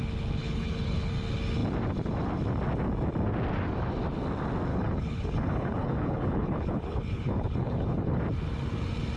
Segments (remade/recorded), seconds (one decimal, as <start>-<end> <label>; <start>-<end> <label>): 0.0-0.4 recorded; 0.4-1.1 remade; 1.1-4.7 recorded; 4.7-8.2 remade; 8.2-9.2 recorded